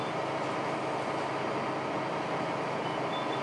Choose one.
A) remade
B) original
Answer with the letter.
B